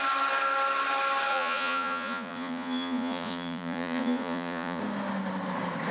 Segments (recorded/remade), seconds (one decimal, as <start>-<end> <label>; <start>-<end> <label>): 0.0-1.3 recorded; 1.3-4.8 remade; 4.8-5.9 recorded